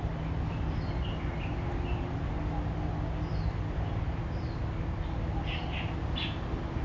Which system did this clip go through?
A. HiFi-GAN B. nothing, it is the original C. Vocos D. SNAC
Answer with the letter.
B